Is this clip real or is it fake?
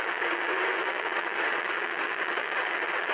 fake